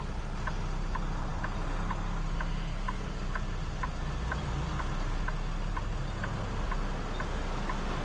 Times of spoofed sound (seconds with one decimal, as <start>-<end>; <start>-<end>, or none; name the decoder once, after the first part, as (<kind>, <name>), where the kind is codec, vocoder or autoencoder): none